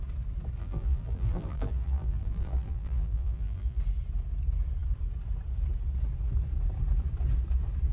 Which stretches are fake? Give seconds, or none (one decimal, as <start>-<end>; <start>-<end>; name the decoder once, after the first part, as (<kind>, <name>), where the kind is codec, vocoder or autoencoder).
0.6-3.8 (vocoder, BigVGAN v2)